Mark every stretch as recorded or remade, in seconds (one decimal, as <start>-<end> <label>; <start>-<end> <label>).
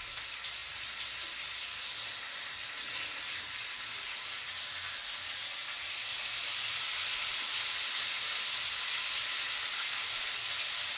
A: 0.0-11.0 recorded